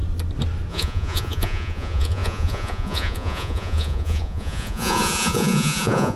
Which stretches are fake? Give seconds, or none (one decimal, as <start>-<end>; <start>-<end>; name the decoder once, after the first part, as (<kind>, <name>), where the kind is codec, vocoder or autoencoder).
0.7-6.2 (vocoder, Vocos)